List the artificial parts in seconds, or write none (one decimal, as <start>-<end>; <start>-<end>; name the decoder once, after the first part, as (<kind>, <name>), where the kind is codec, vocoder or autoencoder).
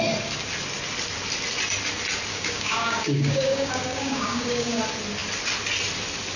2.3-4.8 (codec, DAC)